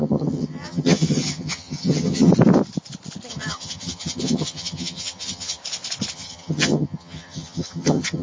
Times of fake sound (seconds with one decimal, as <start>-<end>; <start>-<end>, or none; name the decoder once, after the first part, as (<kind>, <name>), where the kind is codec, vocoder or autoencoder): 0.0-2.3 (vocoder, HiFi-GAN); 3.3-5.6; 6.1-8.2